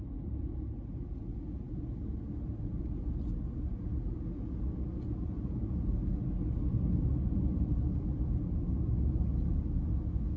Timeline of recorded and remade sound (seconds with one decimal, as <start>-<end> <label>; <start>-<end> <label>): 0.0-10.4 recorded